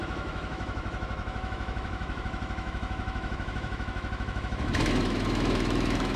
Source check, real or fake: fake